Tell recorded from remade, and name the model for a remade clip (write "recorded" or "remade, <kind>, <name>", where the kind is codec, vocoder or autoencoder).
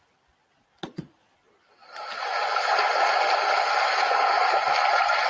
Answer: recorded